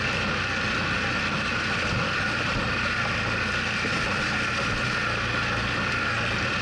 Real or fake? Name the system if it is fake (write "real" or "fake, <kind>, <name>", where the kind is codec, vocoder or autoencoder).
real